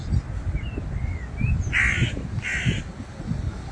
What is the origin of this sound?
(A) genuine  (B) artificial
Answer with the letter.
A